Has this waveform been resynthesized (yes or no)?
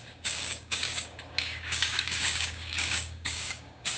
yes